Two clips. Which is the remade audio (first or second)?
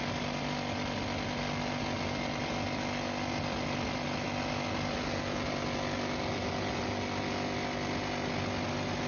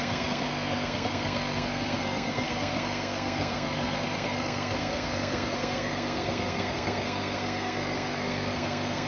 second